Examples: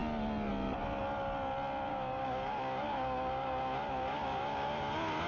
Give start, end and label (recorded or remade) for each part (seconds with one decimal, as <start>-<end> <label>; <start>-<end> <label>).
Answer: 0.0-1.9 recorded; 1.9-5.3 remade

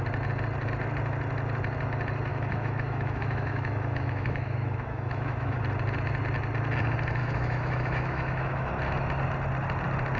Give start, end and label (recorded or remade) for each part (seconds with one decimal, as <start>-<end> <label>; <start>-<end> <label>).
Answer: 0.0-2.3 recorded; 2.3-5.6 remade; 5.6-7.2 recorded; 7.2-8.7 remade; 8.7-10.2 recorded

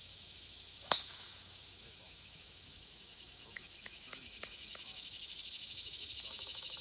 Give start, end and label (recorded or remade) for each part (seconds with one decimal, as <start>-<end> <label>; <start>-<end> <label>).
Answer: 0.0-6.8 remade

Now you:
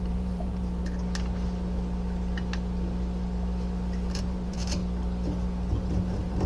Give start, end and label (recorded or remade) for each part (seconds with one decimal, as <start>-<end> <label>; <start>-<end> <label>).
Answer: 0.0-0.8 remade; 0.8-4.2 recorded; 4.2-4.8 remade; 4.8-5.7 recorded; 5.7-6.5 remade